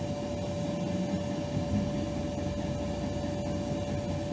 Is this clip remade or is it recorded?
recorded